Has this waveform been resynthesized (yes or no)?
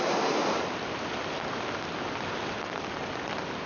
no